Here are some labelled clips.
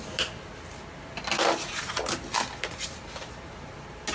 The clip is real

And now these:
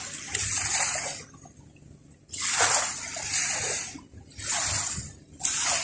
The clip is real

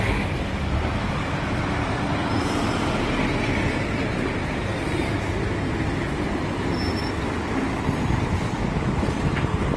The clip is real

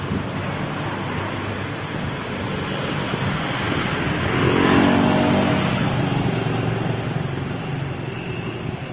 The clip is real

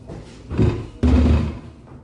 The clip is real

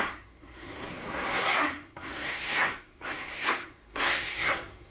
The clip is fake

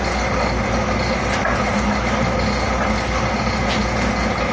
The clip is real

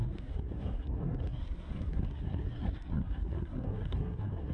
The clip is fake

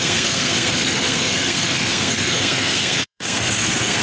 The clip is fake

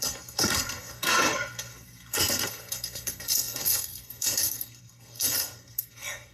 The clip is fake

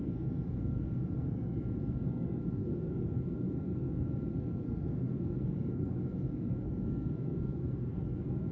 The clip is fake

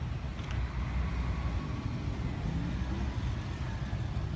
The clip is real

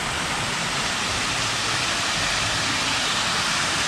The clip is real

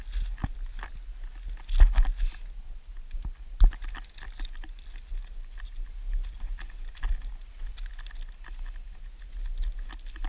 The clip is real